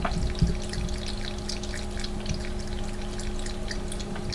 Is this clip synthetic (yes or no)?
no